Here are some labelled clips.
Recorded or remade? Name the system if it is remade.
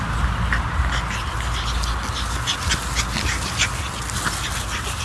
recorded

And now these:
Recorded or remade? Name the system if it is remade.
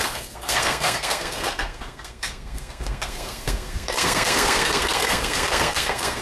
remade, codec, SNAC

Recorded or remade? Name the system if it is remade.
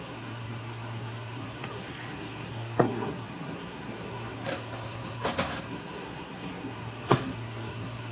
remade, codec, SNAC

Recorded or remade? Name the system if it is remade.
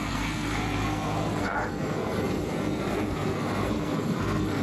remade, codec, SNAC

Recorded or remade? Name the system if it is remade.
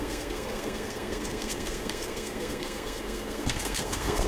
remade, codec, SNAC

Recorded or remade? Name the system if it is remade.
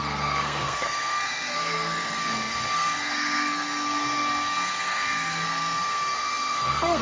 remade, codec, SNAC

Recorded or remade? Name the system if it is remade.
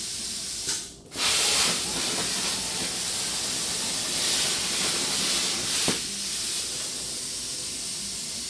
recorded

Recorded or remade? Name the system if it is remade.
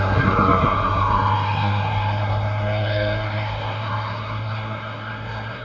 remade, codec, SNAC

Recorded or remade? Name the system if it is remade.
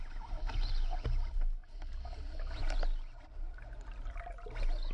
recorded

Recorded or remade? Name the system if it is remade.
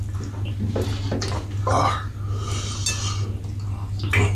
recorded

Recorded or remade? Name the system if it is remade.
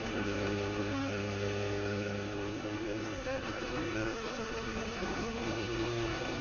remade, codec, SNAC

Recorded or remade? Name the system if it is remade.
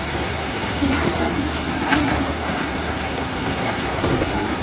remade, codec, SNAC